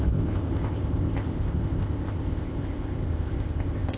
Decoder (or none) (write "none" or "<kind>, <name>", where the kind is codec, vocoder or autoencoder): codec, ZipCodec